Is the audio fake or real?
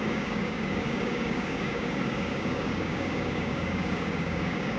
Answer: fake